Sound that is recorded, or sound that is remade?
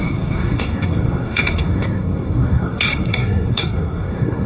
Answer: remade